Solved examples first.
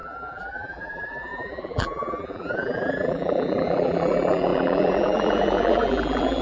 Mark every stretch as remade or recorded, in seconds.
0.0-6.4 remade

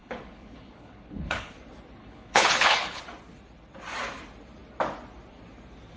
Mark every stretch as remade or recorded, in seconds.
0.0-1.5 remade; 1.5-2.0 recorded; 2.0-3.0 remade; 3.0-6.0 recorded

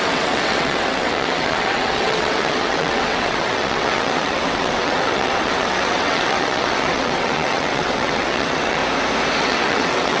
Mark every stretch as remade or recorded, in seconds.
0.0-8.8 remade; 8.8-9.4 recorded; 9.4-10.2 remade

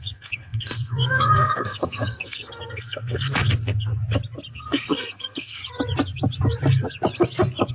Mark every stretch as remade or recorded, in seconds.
0.0-3.9 remade; 3.9-4.5 recorded; 4.5-5.6 remade; 5.6-7.7 recorded

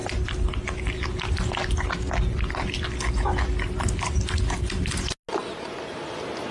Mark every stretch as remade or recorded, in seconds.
0.0-6.5 recorded

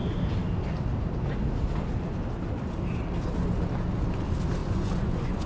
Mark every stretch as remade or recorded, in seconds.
0.0-4.6 recorded; 4.6-5.5 remade

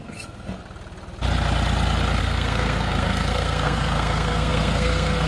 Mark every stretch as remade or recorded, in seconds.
0.0-0.6 remade; 0.6-2.2 recorded; 2.2-5.3 remade

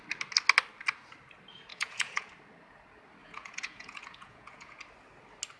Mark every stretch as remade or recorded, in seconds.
0.0-1.7 recorded; 1.7-2.3 remade; 2.3-3.2 recorded; 3.2-4.8 remade; 4.8-5.6 recorded